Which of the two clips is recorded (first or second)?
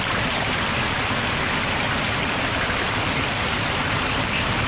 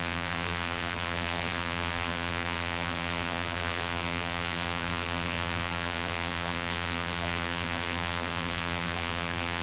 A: first